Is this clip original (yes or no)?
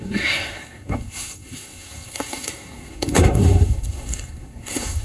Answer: no